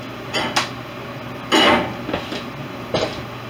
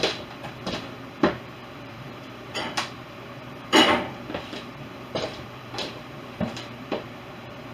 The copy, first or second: second